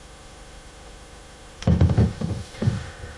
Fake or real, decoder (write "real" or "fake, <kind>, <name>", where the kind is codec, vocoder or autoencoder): fake, autoencoder, DAC-VAE